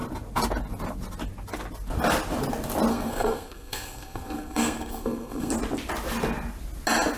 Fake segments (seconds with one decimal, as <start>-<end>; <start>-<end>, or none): 2.9-5.5